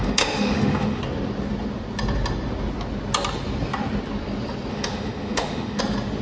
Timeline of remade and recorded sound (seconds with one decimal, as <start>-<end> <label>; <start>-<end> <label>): 0.0-1.0 remade; 1.0-4.7 recorded; 4.7-5.8 remade; 5.8-6.2 recorded